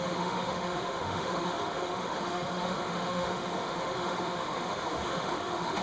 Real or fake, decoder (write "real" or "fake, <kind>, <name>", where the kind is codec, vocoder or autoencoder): fake, autoencoder, DAC-VAE